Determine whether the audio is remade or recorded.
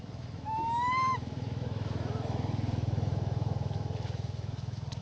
remade